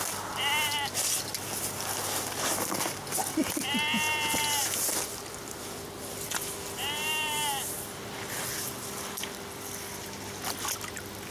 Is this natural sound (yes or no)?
yes